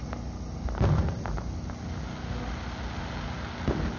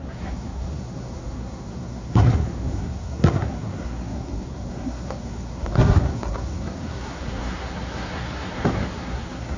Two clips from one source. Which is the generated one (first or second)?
second